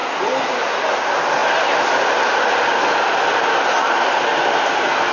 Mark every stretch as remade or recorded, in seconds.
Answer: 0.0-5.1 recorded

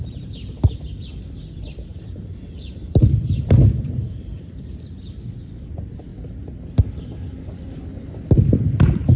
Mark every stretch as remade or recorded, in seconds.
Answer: 0.0-1.9 recorded; 1.9-4.6 remade; 4.6-9.2 recorded

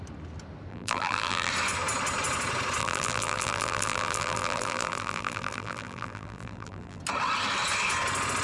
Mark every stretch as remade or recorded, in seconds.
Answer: 0.0-0.7 recorded; 0.7-1.5 remade; 1.5-2.8 recorded; 2.8-7.0 remade; 7.0-8.4 recorded

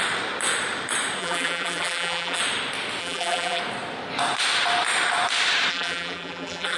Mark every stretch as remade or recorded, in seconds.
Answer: 0.0-1.2 recorded; 1.2-2.4 remade; 2.4-3.0 recorded; 3.0-3.6 remade; 3.6-5.7 recorded; 5.7-6.8 remade

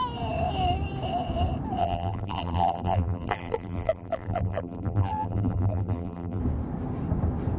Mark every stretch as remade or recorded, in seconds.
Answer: 0.0-1.8 recorded; 1.8-6.4 remade; 6.4-7.6 recorded

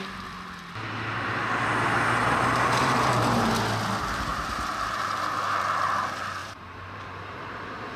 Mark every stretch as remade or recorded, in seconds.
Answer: 0.0-2.2 recorded; 2.2-3.5 remade; 3.5-4.3 recorded; 4.3-5.2 remade; 5.2-6.4 recorded; 6.4-7.2 remade; 7.2-8.0 recorded

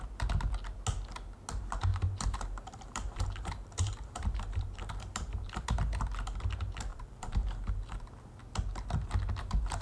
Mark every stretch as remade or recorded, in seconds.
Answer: 0.0-1.9 recorded; 1.9-5.8 remade; 5.8-6.9 recorded; 6.9-8.1 remade; 8.1-9.8 recorded

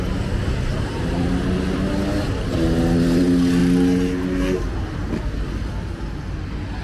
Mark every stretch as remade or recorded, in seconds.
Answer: 0.0-0.7 recorded; 0.7-1.3 remade; 1.3-6.8 recorded